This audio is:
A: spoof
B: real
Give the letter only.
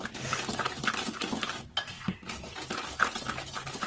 B